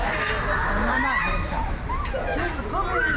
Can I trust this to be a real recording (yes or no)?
yes